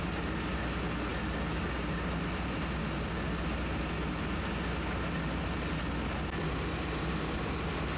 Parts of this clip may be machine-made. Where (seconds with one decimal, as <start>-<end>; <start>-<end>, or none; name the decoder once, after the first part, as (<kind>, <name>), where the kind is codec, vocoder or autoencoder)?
none